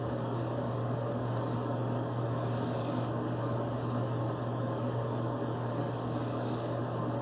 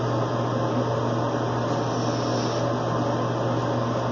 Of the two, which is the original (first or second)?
second